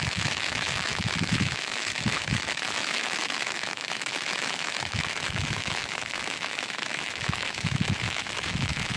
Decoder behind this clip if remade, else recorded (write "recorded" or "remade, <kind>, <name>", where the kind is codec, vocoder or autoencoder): remade, autoencoder, DAC-VAE